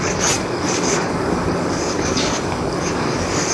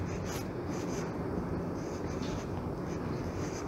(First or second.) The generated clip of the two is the first